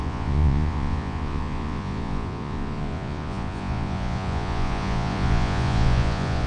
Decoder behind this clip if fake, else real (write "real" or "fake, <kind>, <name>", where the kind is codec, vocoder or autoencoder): fake, vocoder, Vocos